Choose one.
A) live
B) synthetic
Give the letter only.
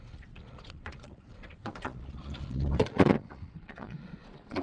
B